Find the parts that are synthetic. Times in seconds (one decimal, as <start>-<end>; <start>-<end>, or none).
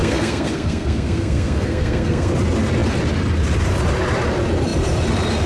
0.0-2.3